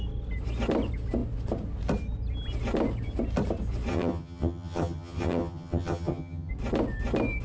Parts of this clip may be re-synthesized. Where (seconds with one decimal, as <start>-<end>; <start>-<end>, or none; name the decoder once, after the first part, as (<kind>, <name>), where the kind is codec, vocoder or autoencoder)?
3.9-6.5 (vocoder, HiFi-GAN)